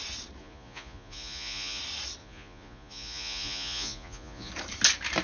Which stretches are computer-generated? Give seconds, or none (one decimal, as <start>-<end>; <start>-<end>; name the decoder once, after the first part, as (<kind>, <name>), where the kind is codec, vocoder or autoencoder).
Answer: 0.4-1.8 (vocoder, Vocos); 2.2-4.5